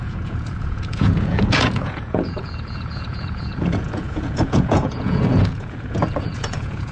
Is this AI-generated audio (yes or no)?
yes